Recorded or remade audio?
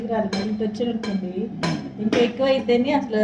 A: recorded